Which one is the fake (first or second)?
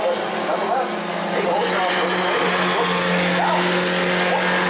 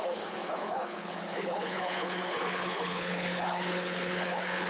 second